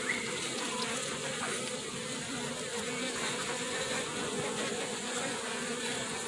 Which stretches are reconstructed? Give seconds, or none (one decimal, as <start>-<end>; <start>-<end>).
1.0-1.6; 2.7-6.3